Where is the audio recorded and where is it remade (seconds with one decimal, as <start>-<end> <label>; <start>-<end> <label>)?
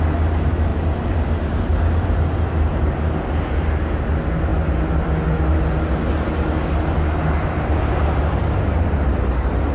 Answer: 0.0-0.7 recorded; 0.7-2.5 remade; 2.5-9.7 recorded